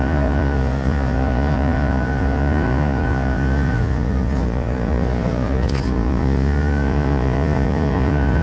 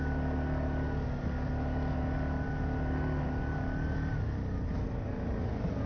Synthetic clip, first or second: first